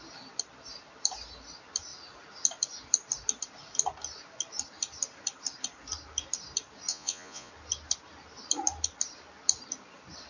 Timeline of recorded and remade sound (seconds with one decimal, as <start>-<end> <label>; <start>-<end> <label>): 0.0-6.9 recorded; 6.9-7.5 remade; 7.5-10.3 recorded